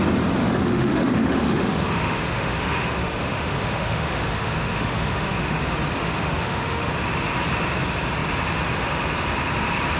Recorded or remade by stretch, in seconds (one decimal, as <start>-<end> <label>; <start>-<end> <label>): 0.0-0.4 recorded; 0.4-5.6 remade; 5.6-6.0 recorded; 6.0-6.9 remade; 6.9-10.0 recorded